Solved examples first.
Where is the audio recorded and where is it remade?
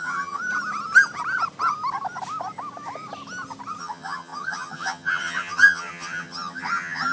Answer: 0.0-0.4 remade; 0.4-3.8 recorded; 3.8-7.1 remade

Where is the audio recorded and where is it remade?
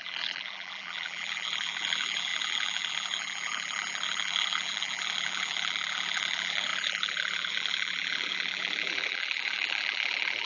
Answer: 0.0-10.5 remade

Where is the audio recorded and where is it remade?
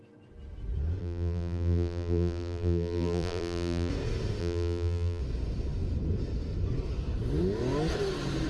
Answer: 0.0-1.0 recorded; 1.0-3.9 remade; 3.9-4.4 recorded; 4.4-5.2 remade; 5.2-8.5 recorded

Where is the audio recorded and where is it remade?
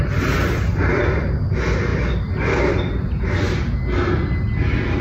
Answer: 0.0-5.0 recorded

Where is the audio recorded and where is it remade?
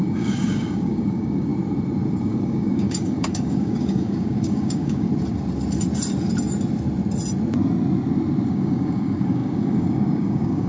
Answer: 0.0-1.5 remade; 1.5-2.1 recorded; 2.1-5.1 remade; 5.1-8.5 recorded; 8.5-10.7 remade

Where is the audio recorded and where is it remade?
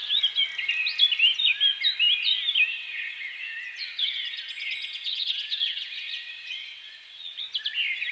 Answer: 0.0-2.7 recorded; 2.7-7.4 remade; 7.4-8.1 recorded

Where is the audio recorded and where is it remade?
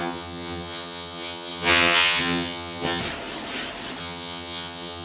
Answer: 0.0-3.0 remade; 3.0-4.0 recorded; 4.0-5.0 remade